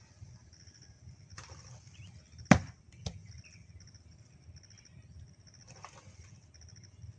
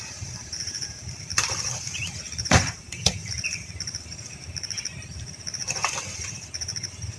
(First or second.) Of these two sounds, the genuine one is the first